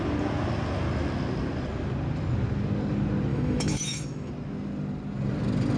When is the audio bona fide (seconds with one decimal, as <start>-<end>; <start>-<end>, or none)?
0.0-3.3; 4.3-5.8

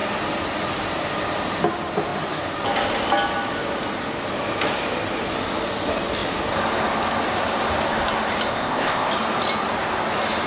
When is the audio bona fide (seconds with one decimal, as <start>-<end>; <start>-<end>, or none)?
0.0-8.5; 9.1-10.5